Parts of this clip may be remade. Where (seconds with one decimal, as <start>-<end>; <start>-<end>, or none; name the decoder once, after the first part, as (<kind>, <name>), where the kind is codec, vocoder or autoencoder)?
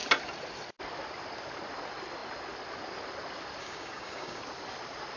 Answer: 3.6-4.4 (codec, DAC)